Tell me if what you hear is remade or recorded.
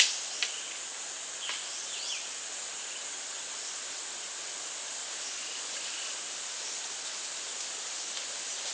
recorded